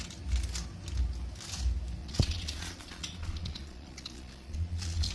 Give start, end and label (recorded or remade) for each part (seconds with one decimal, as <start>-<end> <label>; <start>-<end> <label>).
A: 0.0-2.0 recorded; 2.0-5.1 remade